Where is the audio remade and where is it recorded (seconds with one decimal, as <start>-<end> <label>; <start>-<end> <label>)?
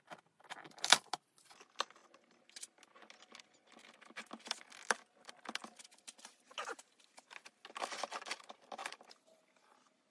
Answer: 0.0-8.8 recorded; 8.8-9.4 remade; 9.4-10.1 recorded